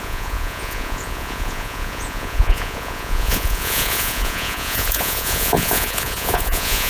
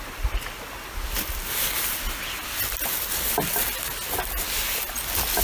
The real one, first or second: second